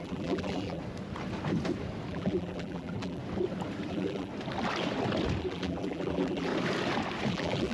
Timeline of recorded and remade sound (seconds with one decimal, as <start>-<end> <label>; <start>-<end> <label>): 0.0-0.8 remade; 0.8-2.1 recorded; 2.1-3.2 remade; 3.2-3.9 recorded; 3.9-4.3 remade; 4.3-5.4 recorded; 5.4-6.5 remade; 6.5-7.3 recorded; 7.3-7.7 remade